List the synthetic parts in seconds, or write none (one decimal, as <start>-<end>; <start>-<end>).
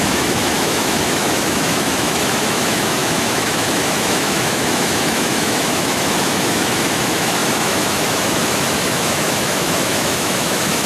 0.0-10.9